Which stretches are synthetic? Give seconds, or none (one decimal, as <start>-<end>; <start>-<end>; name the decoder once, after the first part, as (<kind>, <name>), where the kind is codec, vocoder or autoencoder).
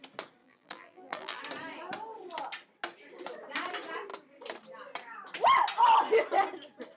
0.4-1.4 (vocoder, BigVGAN v2)